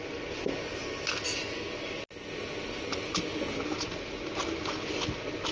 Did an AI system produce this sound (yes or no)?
no